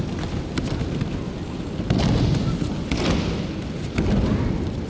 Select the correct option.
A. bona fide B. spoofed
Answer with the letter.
A